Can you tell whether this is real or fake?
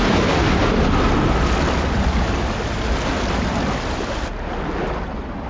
real